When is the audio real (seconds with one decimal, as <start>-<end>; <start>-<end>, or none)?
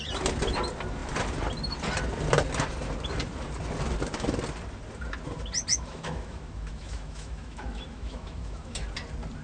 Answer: 0.0-5.7; 8.8-9.4